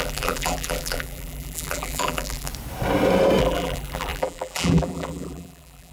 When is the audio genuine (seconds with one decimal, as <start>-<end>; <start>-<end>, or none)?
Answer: 2.5-3.4